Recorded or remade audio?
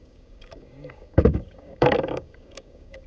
remade